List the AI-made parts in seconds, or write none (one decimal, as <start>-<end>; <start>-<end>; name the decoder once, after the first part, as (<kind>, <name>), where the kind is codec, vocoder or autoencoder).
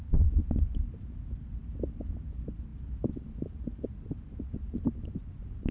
none